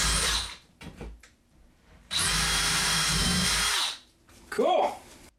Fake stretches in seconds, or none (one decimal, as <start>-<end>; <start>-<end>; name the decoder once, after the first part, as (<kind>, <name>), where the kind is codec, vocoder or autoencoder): 0.0-3.3 (vocoder, BigVGAN v2); 3.8-5.4